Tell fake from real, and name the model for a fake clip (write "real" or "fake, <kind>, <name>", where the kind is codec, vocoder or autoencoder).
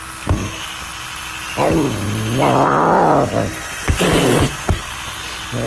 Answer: real